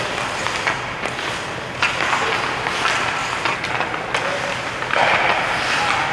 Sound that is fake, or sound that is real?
real